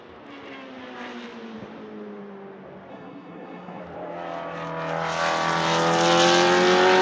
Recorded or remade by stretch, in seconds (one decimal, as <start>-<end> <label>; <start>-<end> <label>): 0.0-2.9 recorded; 2.9-3.8 remade; 3.8-7.0 recorded